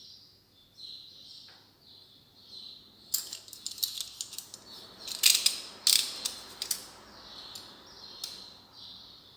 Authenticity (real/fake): real